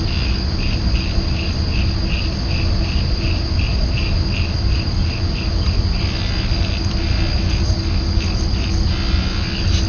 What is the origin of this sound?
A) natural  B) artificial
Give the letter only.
A